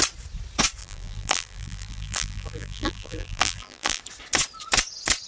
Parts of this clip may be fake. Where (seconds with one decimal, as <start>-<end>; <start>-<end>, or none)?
0.8-4.0

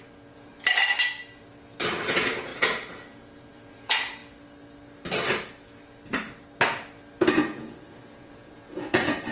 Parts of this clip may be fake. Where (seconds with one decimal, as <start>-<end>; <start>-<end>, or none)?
0.0-0.5; 2.0-4.2; 7.2-9.3

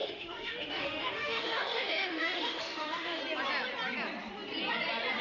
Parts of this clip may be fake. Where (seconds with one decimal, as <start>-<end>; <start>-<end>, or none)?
0.0-3.2

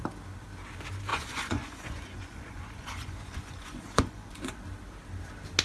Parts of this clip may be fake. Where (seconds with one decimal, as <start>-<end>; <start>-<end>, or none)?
1.1-4.5

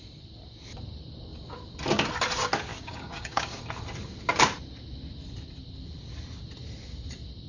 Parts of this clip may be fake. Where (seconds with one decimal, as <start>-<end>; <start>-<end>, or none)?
2.7-3.6

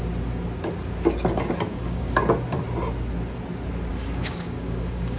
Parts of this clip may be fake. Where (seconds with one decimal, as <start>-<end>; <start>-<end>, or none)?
1.7-2.2; 3.9-5.2